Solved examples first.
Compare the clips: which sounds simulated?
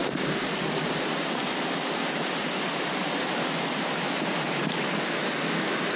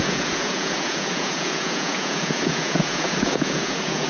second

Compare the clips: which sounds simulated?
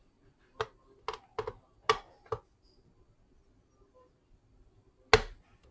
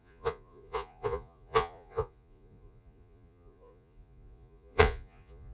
second